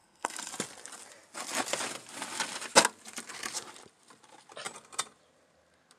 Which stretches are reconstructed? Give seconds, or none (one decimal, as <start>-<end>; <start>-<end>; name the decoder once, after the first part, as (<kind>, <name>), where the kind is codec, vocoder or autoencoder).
0.0-0.5 (codec, SNAC)